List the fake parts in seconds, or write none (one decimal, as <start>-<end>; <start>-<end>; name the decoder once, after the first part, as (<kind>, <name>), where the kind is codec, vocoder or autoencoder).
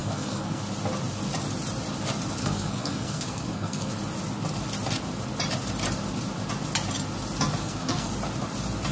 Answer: 0.0-0.6 (codec, SNAC); 2.4-3.9; 7.6-8.1